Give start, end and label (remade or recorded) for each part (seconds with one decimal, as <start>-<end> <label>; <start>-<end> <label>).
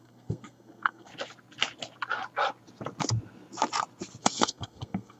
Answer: 0.0-1.1 remade; 1.1-4.2 recorded; 4.2-5.2 remade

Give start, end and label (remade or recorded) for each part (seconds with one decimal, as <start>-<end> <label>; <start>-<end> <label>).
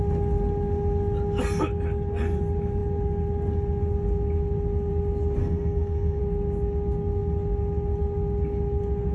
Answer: 0.0-5.4 recorded; 5.4-6.2 remade; 6.2-9.1 recorded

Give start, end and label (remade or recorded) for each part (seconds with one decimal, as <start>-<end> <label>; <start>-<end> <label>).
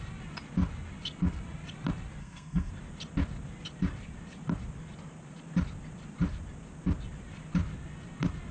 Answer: 0.0-2.2 recorded; 2.2-2.7 remade; 2.7-8.5 recorded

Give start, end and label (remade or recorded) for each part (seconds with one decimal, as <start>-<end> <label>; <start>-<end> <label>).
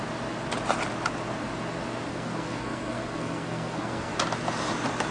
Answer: 0.0-2.1 recorded; 2.1-4.1 remade; 4.1-5.1 recorded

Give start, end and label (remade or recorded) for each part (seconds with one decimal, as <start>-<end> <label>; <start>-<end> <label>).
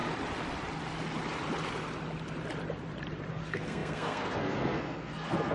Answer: 0.0-3.3 recorded; 3.3-5.5 remade